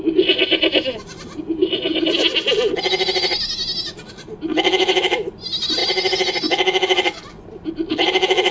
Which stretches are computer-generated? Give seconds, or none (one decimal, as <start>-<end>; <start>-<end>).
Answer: none